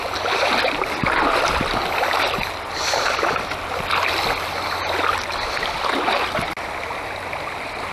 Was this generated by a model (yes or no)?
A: no